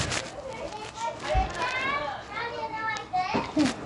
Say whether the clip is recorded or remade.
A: recorded